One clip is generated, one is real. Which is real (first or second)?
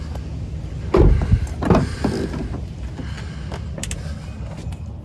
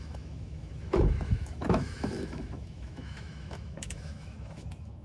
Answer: first